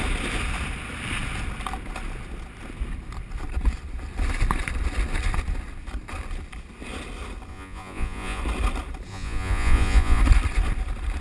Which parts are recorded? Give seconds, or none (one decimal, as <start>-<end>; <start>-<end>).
0.0-7.5; 8.4-9.1; 10.2-11.2

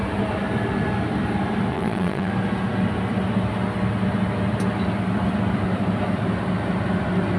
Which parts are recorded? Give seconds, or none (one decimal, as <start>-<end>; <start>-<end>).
0.0-1.7; 2.3-7.4